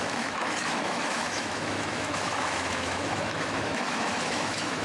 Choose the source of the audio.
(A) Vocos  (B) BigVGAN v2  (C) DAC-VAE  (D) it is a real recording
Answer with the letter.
C